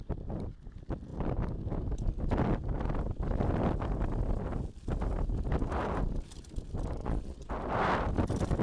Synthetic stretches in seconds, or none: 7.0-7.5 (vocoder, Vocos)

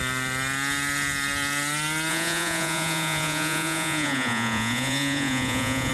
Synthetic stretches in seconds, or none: 2.1-5.9 (vocoder, Vocos)

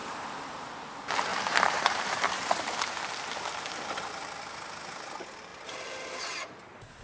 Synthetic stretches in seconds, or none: 0.0-0.7 (vocoder, BigVGAN v2); 1.3-2.8

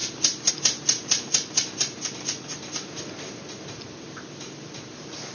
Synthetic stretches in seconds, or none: none